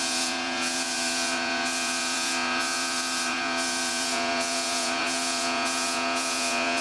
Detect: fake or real fake